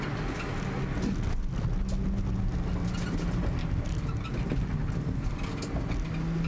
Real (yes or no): yes